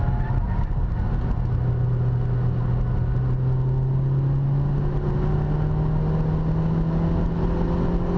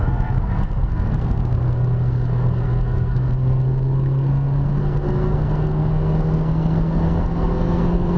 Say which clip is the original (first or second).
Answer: first